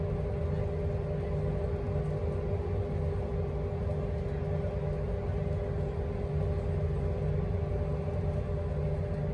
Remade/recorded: recorded